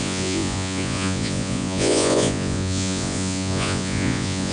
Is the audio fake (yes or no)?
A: yes